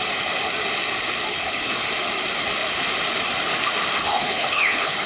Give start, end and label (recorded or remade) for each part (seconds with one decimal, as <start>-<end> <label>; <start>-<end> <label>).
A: 0.0-1.3 recorded; 1.3-1.9 remade; 1.9-4.0 recorded; 4.0-5.1 remade